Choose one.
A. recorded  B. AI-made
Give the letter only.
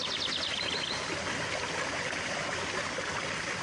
A